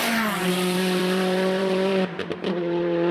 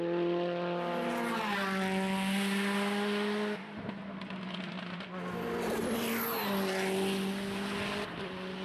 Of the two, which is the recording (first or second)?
second